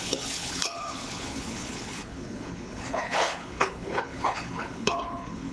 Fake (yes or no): yes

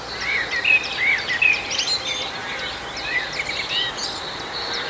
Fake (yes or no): no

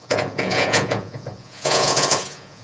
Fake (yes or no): yes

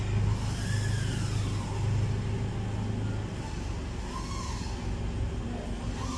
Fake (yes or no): no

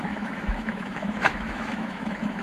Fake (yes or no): yes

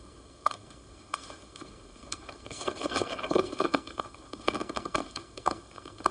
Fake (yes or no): yes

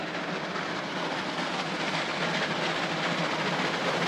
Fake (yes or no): no